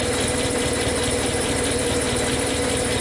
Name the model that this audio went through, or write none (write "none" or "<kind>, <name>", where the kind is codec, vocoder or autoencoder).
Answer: none